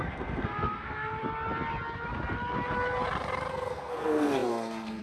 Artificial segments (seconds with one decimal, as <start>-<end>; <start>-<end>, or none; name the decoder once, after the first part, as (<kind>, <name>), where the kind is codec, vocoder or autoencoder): 0.0-1.2 (codec, SNAC); 3.5-5.0